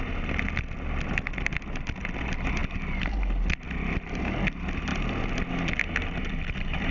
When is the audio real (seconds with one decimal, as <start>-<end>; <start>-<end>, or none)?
0.0-6.9